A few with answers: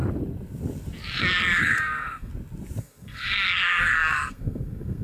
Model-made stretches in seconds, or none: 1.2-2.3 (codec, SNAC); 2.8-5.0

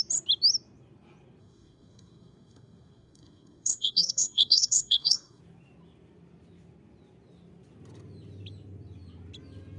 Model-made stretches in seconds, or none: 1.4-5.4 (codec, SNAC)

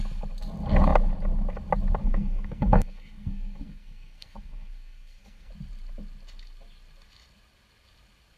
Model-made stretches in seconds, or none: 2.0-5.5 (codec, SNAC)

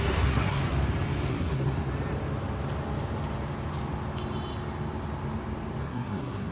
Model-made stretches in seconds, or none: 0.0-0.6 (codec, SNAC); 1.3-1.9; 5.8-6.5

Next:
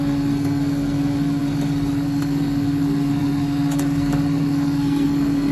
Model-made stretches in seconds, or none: 0.0-5.5 (codec, SNAC)